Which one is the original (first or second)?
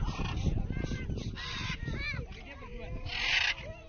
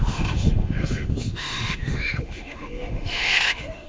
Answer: first